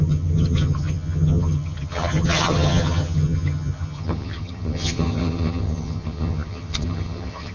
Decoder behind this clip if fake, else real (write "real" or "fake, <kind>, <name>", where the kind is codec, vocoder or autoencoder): fake, vocoder, HiFi-GAN